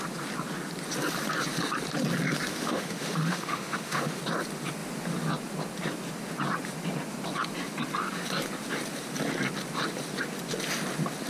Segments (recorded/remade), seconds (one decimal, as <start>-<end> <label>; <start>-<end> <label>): 0.0-2.5 recorded; 2.5-4.2 remade; 4.2-11.3 recorded